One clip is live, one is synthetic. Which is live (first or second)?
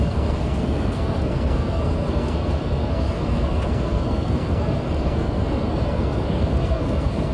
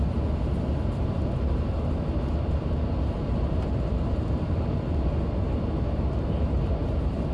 second